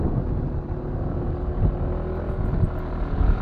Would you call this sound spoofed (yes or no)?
no